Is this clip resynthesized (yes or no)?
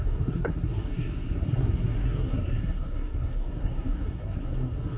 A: yes